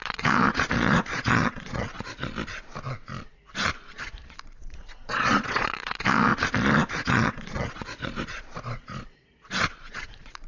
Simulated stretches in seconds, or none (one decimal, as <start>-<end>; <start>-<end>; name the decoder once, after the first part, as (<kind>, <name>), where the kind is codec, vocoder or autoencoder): 0.0-2.3 (vocoder, Vocos); 4.4-6.3; 6.9-10.5